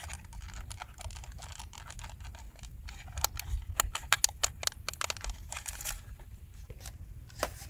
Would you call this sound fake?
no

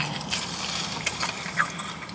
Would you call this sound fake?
no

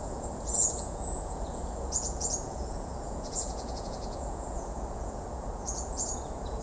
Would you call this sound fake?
yes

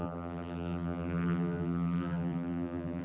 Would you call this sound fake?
yes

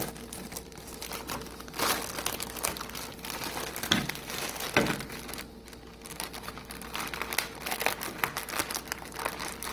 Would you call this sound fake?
no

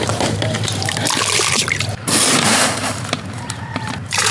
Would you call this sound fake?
yes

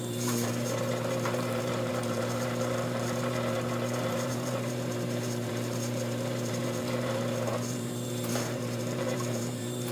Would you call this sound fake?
yes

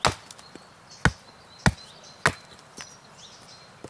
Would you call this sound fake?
no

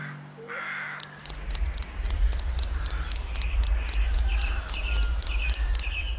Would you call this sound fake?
no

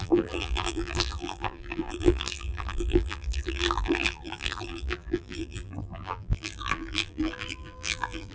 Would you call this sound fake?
yes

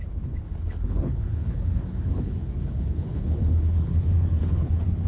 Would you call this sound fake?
yes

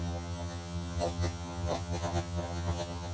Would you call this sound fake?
yes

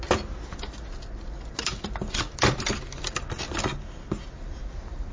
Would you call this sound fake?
no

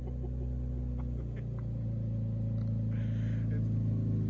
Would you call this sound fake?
no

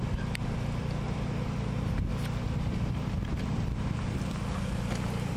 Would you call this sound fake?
yes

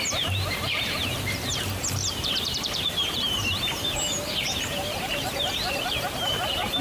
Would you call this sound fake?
yes